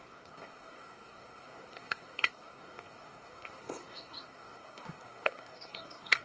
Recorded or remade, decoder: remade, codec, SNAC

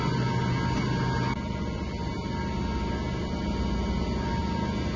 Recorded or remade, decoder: recorded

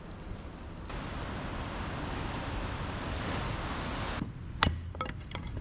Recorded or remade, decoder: recorded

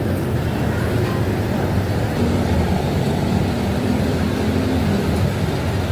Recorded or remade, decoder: recorded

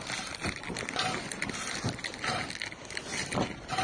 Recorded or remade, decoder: recorded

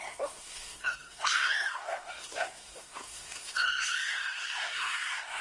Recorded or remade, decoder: remade, codec, SNAC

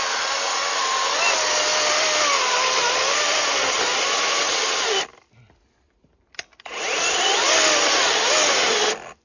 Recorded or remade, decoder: recorded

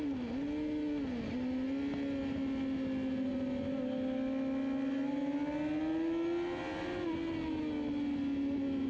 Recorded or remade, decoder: recorded